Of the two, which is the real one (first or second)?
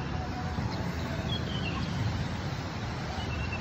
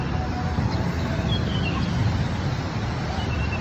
second